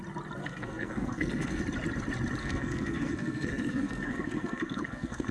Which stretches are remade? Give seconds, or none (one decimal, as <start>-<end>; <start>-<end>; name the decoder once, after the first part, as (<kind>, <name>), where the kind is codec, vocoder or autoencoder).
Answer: 0.4-1.6 (codec, SNAC); 2.4-5.3